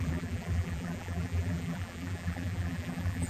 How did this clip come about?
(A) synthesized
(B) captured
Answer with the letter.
A